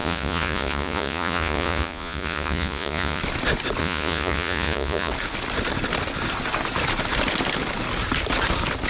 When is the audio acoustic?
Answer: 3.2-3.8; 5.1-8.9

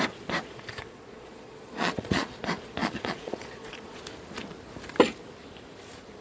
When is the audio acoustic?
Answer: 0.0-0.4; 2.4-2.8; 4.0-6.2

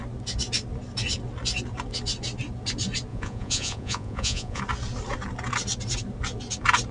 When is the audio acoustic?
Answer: 0.0-3.1; 4.6-6.9

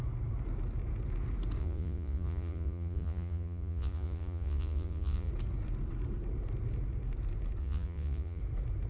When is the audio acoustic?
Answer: 0.0-1.6; 5.3-7.6; 8.4-8.9